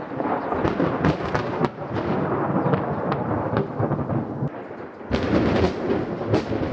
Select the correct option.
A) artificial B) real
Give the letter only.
B